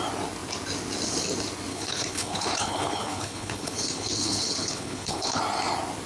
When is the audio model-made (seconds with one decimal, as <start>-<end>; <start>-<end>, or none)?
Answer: 1.7-5.4